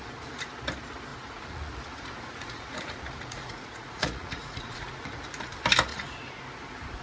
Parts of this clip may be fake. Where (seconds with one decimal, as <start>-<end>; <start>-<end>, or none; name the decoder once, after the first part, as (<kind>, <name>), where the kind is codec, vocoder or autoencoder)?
1.1-5.3 (vocoder, Vocos); 5.9-6.4